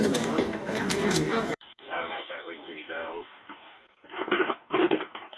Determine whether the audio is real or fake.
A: fake